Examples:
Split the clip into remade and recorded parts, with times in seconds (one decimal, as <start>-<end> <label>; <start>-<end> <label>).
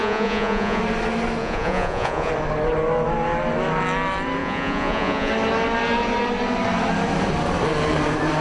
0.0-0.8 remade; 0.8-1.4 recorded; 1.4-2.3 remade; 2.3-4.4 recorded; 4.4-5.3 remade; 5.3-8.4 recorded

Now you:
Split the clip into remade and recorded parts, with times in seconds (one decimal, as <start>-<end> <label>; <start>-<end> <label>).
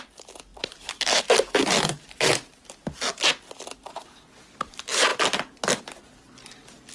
0.0-0.5 recorded; 0.5-2.7 remade; 2.7-6.9 recorded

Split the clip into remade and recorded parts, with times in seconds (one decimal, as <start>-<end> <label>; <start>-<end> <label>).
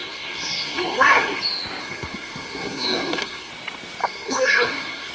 0.0-1.4 remade; 1.4-1.8 recorded; 1.8-3.5 remade; 3.5-4.0 recorded; 4.0-5.1 remade